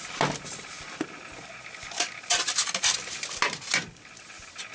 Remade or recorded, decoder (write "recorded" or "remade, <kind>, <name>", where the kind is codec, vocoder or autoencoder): recorded